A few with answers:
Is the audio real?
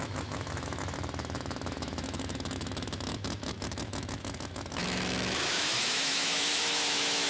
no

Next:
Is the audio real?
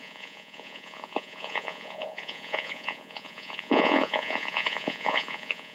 no